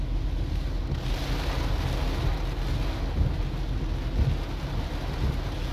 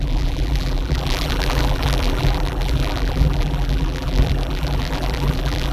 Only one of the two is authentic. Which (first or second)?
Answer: first